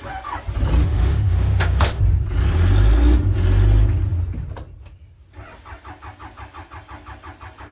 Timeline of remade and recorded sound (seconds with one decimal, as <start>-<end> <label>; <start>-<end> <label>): 0.0-0.8 recorded; 0.8-2.0 remade; 2.0-7.7 recorded